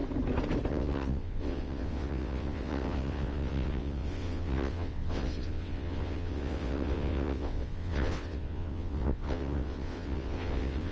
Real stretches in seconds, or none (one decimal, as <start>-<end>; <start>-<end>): 0.0-0.7